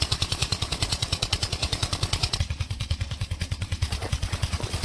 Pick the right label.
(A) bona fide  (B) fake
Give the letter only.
B